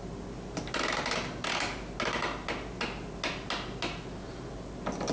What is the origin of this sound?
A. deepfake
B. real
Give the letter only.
B